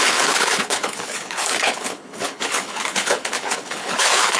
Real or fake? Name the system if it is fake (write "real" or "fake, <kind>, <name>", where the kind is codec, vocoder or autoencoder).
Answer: fake, codec, HILCodec